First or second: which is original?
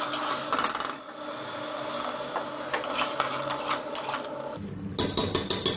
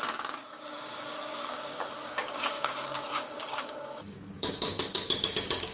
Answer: first